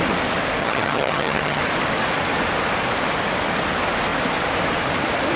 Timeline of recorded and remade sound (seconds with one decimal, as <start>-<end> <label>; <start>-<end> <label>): 0.0-0.6 recorded; 0.6-1.6 remade; 1.6-5.4 recorded